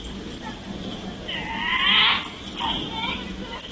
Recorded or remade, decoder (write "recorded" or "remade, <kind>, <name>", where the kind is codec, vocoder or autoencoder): recorded